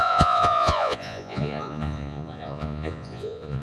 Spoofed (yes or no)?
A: yes